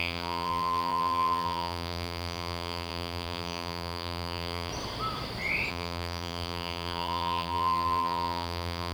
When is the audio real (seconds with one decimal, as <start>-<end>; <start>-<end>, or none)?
4.7-5.7